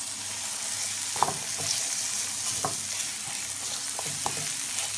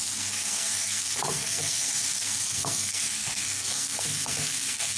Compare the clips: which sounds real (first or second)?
first